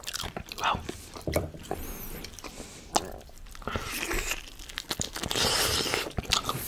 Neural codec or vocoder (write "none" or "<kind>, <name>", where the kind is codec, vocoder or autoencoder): vocoder, BigVGAN v2